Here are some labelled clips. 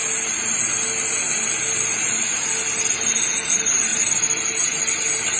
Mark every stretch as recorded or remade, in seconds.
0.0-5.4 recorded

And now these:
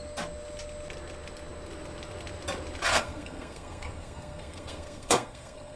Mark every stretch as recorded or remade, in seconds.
0.0-2.9 recorded; 2.9-5.8 remade

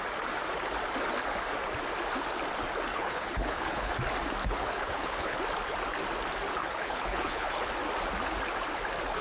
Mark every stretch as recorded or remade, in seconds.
0.0-2.9 recorded; 2.9-3.9 remade; 3.9-4.4 recorded; 4.4-5.4 remade; 5.4-6.6 recorded; 6.6-7.7 remade; 7.7-9.2 recorded